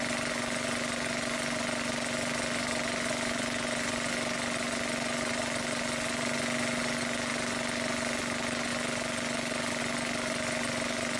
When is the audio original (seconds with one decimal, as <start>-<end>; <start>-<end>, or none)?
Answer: 0.0-11.2